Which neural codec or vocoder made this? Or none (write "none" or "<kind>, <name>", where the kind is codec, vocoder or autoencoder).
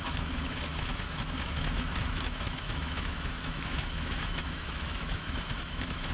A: autoencoder, DAC-VAE